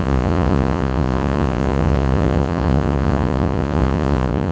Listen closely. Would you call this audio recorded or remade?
remade